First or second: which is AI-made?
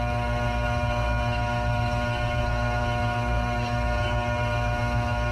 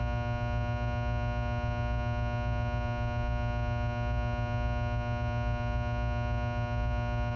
first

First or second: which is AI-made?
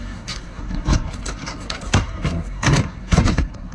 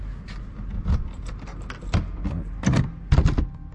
first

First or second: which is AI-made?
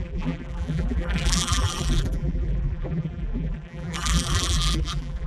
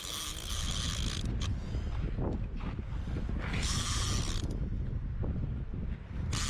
first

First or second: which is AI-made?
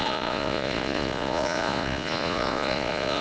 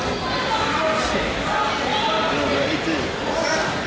first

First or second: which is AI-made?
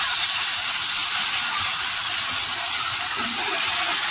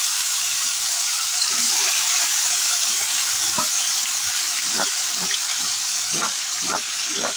second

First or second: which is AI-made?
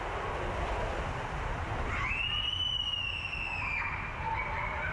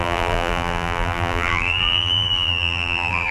second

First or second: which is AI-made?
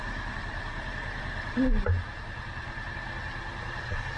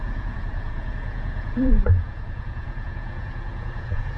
second